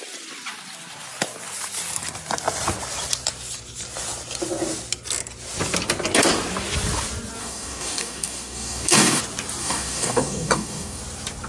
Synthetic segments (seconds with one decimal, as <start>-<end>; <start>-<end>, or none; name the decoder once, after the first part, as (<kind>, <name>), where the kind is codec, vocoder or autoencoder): 7.4-9.2 (codec, DAC); 9.6-11.0